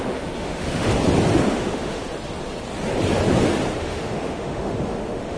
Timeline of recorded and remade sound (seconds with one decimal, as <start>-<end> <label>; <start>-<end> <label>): 0.0-0.9 remade; 0.9-1.5 recorded; 1.5-2.0 remade; 2.0-3.8 recorded; 3.8-5.4 remade